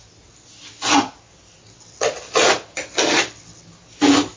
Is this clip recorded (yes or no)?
yes